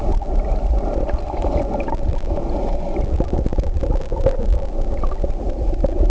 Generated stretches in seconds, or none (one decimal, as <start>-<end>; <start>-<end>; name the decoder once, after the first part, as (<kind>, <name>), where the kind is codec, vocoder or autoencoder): none